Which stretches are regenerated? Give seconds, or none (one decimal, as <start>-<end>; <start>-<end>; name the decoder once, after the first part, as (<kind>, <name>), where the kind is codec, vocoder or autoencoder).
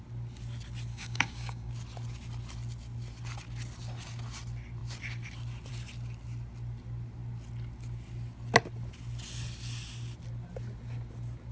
0.9-1.7 (codec, DAC)